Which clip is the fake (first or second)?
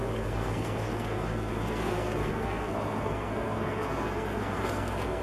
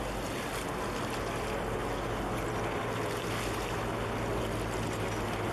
first